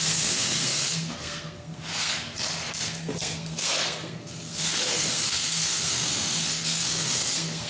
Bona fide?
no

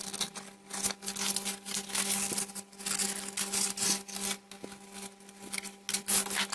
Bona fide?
yes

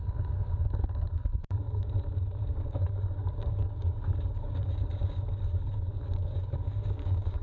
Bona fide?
no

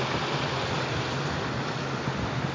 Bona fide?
yes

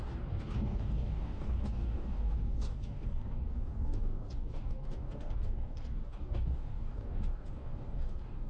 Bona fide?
no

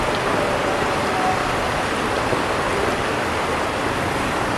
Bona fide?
yes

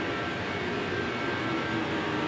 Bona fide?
yes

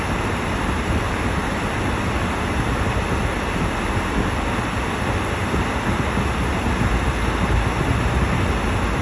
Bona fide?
yes